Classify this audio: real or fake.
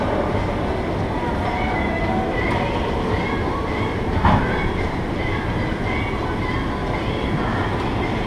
real